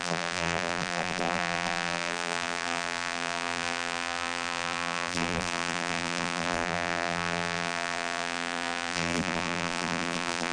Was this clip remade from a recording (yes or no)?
yes